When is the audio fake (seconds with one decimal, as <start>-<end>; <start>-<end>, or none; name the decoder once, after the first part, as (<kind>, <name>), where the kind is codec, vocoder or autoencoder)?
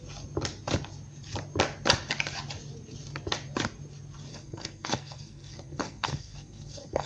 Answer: 4.3-7.1 (codec, SNAC)